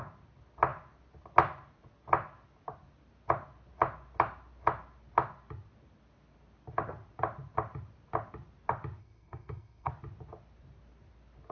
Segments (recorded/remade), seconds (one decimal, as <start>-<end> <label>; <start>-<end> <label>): 0.0-9.0 recorded; 9.0-9.9 remade; 9.9-11.5 recorded